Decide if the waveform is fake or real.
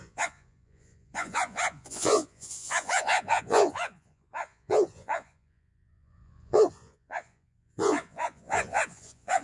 fake